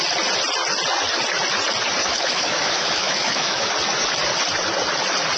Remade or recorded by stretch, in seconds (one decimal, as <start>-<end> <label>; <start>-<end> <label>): 0.0-2.0 recorded; 2.0-3.7 remade; 3.7-5.4 recorded